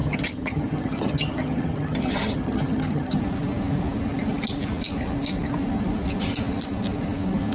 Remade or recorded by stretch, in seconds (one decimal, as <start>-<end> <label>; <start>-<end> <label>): 0.0-3.2 remade; 3.2-7.5 recorded